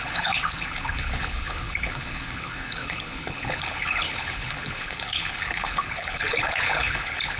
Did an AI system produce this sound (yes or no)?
yes